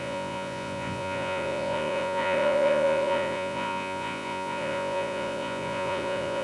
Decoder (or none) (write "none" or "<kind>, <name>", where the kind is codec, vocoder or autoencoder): vocoder, Vocos